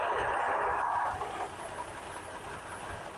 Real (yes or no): yes